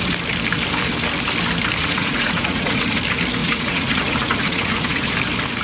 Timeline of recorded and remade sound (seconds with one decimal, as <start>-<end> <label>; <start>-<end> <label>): 0.0-1.8 recorded; 1.8-3.0 remade; 3.0-3.4 recorded; 3.4-5.1 remade; 5.1-5.6 recorded